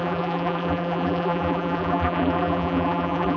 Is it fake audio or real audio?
fake